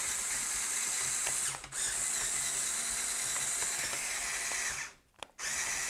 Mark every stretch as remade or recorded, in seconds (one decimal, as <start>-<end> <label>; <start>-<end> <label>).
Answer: 0.0-5.9 recorded

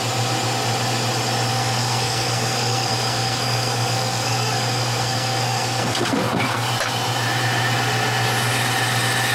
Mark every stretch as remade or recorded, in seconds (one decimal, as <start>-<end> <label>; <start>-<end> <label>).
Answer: 0.0-1.5 recorded; 1.5-6.7 remade; 6.7-9.3 recorded

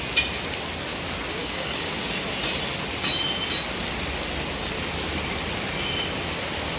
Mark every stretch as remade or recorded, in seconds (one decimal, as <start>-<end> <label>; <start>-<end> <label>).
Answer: 0.0-1.4 recorded; 1.4-2.0 remade; 2.0-6.8 recorded

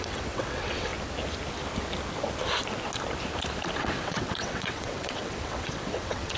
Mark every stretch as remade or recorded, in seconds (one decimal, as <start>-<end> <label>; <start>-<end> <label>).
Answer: 0.0-0.9 remade; 0.9-3.8 recorded; 3.8-6.4 remade